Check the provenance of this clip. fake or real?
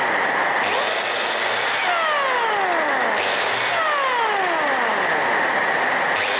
real